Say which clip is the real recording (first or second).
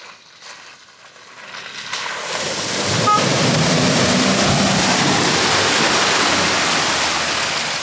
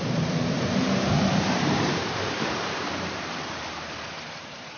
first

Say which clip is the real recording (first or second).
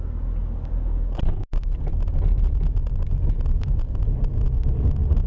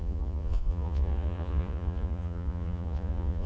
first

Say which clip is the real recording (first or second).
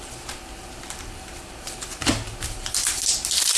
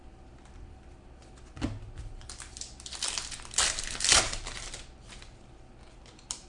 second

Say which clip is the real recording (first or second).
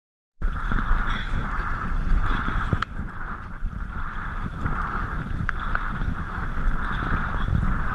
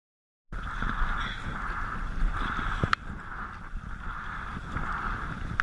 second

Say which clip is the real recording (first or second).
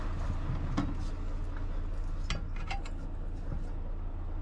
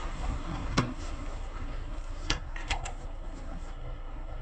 first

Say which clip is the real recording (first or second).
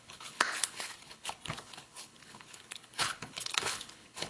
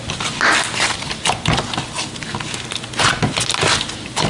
second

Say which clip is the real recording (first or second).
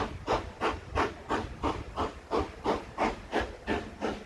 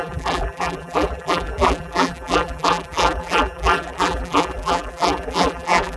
first